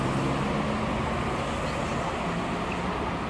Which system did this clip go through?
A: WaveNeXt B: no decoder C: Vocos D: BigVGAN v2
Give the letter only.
B